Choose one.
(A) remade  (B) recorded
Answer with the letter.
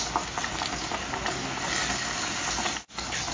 B